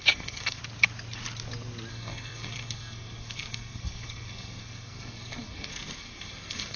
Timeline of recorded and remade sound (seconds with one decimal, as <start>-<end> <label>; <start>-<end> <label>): 0.0-0.6 remade; 0.6-1.9 recorded; 1.9-6.8 remade